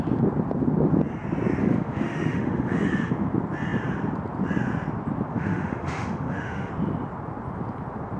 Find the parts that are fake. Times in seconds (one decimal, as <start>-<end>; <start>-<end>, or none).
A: 1.6-3.1; 5.3-6.7